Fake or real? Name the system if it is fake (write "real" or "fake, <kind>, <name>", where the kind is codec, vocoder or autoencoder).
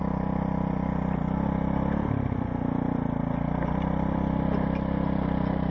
real